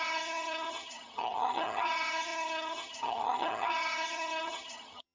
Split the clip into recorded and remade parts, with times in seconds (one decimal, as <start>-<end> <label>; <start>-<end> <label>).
0.0-5.1 remade

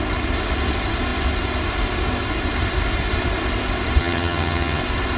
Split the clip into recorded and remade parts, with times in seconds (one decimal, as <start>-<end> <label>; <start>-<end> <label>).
0.0-4.0 recorded; 4.0-4.8 remade; 4.8-5.2 recorded

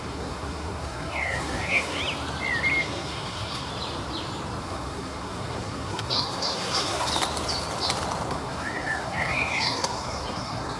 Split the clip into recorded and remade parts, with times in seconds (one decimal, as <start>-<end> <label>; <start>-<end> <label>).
0.0-2.0 remade; 2.0-2.8 recorded; 2.8-3.7 remade; 3.7-4.6 recorded; 4.6-7.1 remade; 7.1-8.3 recorded; 8.3-10.8 remade